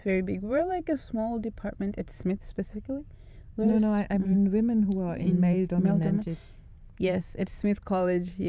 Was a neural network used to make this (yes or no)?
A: yes